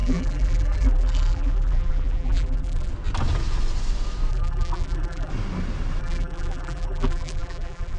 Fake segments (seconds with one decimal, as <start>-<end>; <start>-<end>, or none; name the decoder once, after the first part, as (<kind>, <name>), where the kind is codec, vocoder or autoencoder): 0.0-2.9 (vocoder, BigVGAN v2); 4.3-5.3; 6.0-8.0